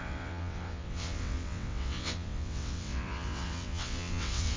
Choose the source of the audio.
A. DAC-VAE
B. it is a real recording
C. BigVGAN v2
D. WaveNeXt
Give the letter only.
D